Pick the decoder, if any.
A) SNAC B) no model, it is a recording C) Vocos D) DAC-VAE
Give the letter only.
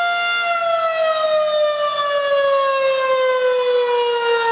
B